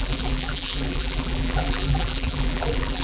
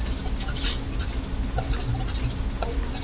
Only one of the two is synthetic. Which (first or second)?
first